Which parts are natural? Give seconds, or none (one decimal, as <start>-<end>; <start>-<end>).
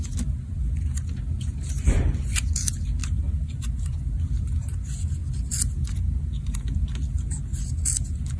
0.0-3.0; 4.1-8.4